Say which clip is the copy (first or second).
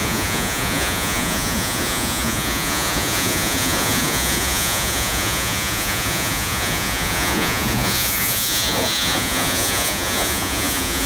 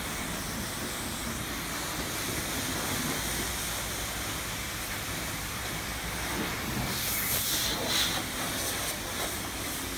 first